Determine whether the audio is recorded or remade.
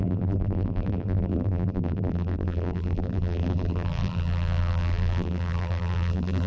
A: remade